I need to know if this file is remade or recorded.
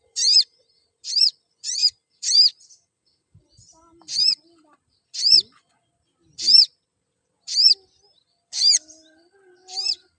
remade